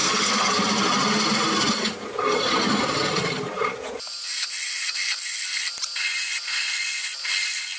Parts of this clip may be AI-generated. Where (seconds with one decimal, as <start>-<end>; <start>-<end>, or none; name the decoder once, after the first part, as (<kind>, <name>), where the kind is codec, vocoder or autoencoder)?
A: 0.0-0.5 (codec, SNAC)